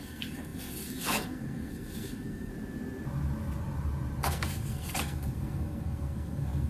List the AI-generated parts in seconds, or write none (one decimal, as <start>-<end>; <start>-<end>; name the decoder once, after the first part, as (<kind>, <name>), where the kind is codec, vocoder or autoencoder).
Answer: 0.0-2.5 (codec, SNAC); 4.2-6.7

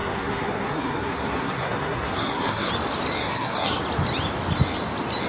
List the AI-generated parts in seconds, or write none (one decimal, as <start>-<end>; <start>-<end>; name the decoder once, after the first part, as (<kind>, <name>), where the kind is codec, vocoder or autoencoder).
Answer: 0.0-2.7 (codec, SNAC); 3.2-3.8

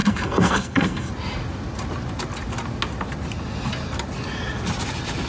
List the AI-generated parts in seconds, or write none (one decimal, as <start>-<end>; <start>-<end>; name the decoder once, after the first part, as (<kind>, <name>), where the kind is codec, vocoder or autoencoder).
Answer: 0.0-1.1 (codec, SNAC)

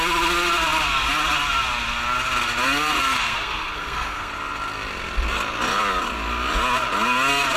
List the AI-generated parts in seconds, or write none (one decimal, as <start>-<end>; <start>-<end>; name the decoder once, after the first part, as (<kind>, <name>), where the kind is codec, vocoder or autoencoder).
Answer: 3.2-4.3 (codec, SNAC)